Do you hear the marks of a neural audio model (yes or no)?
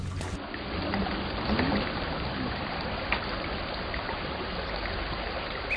no